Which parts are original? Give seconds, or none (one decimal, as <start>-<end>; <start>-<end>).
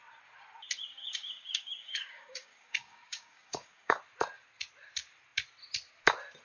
0.0-1.0; 4.0-6.4